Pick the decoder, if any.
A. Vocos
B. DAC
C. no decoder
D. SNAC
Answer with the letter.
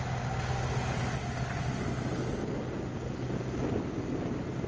C